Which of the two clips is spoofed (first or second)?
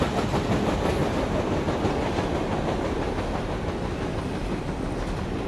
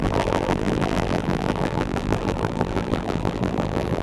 second